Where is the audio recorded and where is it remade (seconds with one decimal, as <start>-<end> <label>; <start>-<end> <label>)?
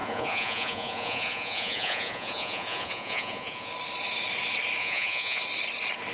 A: 0.0-3.7 remade; 3.7-4.8 recorded; 4.8-5.4 remade; 5.4-6.1 recorded